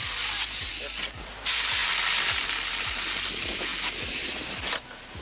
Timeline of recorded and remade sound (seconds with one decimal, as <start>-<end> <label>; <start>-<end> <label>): 0.0-5.2 recorded